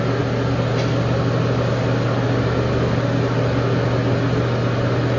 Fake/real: real